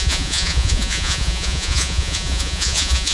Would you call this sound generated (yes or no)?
yes